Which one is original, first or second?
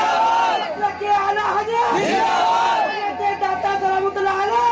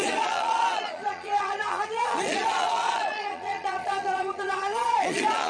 first